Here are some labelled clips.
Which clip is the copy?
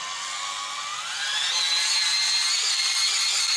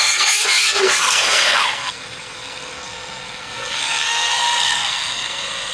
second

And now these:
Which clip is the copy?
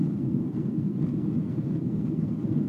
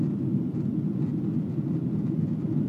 first